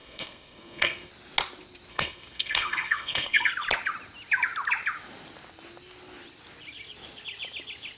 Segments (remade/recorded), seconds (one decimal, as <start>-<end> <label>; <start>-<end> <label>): 0.0-1.1 remade; 1.1-1.9 recorded; 1.9-3.5 remade; 3.5-8.0 recorded